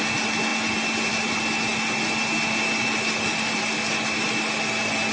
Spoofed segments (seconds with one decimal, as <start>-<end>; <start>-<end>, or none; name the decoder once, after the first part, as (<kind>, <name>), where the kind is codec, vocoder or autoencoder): none